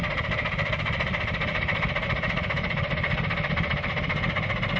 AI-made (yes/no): no